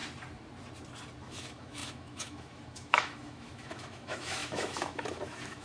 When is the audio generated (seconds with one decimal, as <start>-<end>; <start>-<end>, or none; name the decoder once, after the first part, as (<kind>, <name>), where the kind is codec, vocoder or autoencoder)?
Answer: 1.2-5.6 (autoencoder, DAC-VAE)